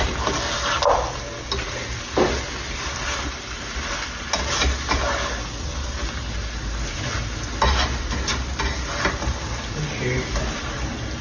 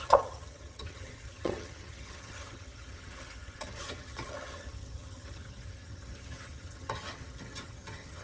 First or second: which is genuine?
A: first